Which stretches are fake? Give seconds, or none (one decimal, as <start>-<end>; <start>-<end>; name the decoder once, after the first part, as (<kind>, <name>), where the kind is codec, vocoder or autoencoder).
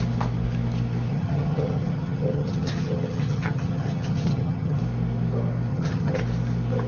1.1-4.8 (vocoder, HiFi-GAN); 5.7-6.2